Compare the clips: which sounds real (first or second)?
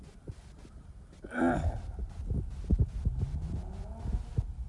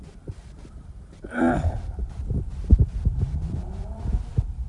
first